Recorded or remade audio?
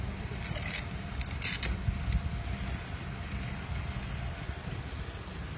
recorded